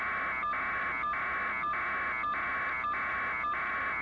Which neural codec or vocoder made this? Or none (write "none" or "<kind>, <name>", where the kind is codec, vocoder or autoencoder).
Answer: none